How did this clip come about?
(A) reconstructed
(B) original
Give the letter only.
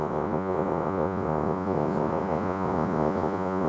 A